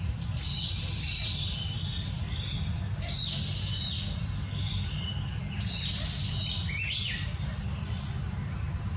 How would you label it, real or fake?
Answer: real